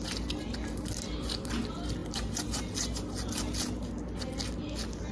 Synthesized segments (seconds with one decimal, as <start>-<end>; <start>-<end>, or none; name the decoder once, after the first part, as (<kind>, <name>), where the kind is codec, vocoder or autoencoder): none